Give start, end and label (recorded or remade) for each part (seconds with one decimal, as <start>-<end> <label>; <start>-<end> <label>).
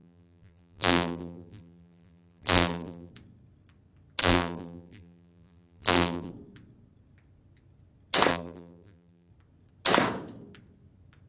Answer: 0.0-3.1 remade; 3.1-4.2 recorded; 4.2-6.3 remade; 6.3-8.3 recorded; 8.3-9.3 remade; 9.3-11.3 recorded